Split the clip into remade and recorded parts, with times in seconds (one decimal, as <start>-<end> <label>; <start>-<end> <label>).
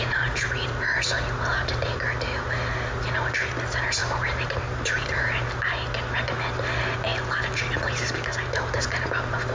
0.0-4.0 recorded; 4.0-5.2 remade; 5.2-9.5 recorded